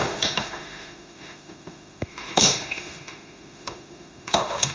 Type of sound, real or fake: fake